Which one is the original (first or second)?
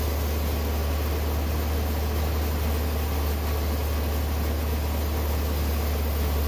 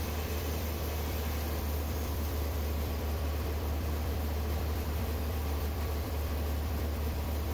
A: first